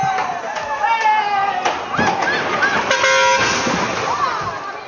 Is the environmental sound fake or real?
real